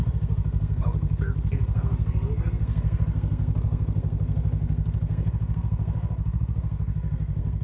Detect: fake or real fake